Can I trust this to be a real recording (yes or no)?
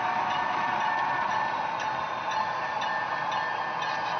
yes